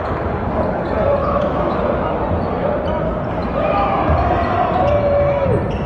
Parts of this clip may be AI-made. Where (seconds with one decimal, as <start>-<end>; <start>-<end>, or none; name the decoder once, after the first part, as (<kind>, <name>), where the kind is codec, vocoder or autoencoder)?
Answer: 1.2-1.8 (autoencoder, DAC-VAE)

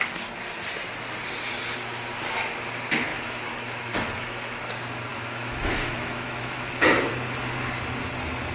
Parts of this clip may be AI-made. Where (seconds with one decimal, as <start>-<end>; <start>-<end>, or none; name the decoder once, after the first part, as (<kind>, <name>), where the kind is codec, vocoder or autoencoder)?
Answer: 3.1-4.6 (autoencoder, DAC-VAE); 5.1-7.1

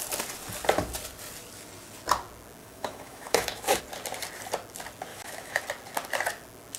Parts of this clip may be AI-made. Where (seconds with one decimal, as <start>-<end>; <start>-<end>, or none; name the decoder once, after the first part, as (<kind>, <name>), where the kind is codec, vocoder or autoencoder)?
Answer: 2.6-3.8 (autoencoder, DAC-VAE); 5.1-5.6

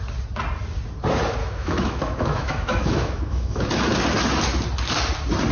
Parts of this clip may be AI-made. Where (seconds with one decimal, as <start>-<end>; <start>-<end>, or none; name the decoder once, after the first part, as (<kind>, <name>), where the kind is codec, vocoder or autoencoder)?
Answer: 1.4-3.7 (autoencoder, DAC-VAE)

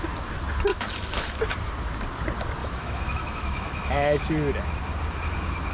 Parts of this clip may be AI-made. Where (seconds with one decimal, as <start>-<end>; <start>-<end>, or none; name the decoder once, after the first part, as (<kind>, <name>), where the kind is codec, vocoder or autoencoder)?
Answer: 0.7-1.4 (autoencoder, DAC-VAE); 2.6-4.2

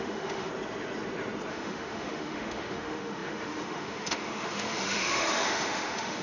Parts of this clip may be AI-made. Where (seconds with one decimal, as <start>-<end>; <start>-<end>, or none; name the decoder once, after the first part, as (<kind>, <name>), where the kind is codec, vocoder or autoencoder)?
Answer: 0.0-0.5 (autoencoder, DAC-VAE); 1.5-6.2